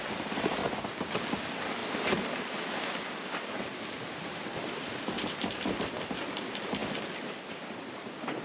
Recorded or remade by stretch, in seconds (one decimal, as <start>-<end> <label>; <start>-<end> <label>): 0.0-8.4 recorded